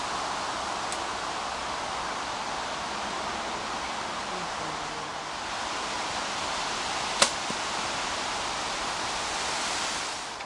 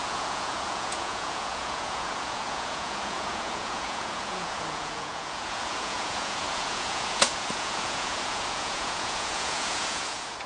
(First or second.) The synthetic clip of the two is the second